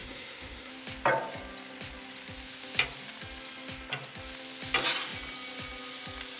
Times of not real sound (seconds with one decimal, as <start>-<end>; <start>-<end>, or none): 0.0-0.7